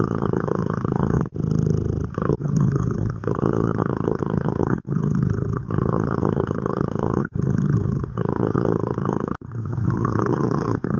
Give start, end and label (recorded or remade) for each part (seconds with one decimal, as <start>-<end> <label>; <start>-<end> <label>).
0.0-1.2 remade; 1.2-2.1 recorded; 2.1-11.0 remade